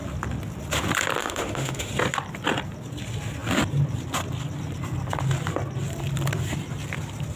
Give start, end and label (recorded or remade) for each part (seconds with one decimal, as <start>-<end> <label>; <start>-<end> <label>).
0.0-1.2 recorded; 1.2-1.9 remade; 1.9-7.4 recorded